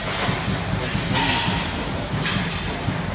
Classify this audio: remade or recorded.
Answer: recorded